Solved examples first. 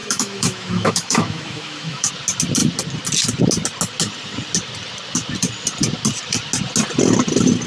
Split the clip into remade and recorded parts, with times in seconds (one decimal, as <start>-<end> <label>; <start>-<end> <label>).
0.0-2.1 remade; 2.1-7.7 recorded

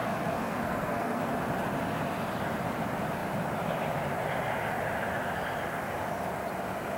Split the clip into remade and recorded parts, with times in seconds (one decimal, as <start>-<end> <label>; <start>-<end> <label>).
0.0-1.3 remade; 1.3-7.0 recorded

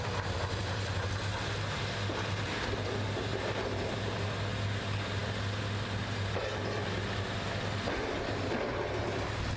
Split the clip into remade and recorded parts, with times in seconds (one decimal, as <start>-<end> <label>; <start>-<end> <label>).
0.0-3.3 recorded; 3.3-3.9 remade; 3.9-9.6 recorded

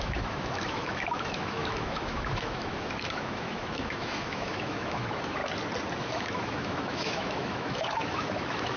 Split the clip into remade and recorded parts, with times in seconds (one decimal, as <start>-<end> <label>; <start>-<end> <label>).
0.0-5.4 remade; 5.4-6.0 recorded; 6.0-8.8 remade